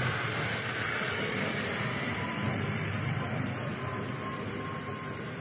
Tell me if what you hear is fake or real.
real